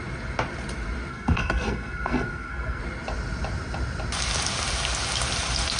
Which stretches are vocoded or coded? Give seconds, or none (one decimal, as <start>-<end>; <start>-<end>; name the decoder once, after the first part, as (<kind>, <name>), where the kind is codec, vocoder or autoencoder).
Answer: 1.1-2.8 (codec, SNAC)